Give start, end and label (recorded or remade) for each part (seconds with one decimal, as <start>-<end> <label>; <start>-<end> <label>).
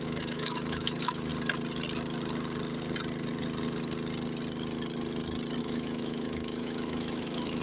0.0-1.3 remade; 1.3-5.6 recorded; 5.6-7.6 remade